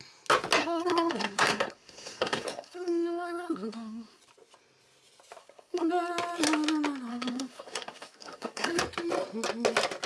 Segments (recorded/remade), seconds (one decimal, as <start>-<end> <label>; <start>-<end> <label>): 0.0-0.6 recorded; 0.6-4.2 remade; 4.2-5.4 recorded; 5.4-5.9 remade; 5.9-7.1 recorded; 7.1-8.8 remade; 8.8-10.1 recorded